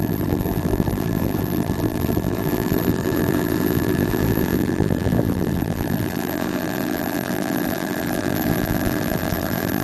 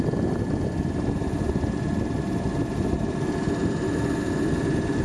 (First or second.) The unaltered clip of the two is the second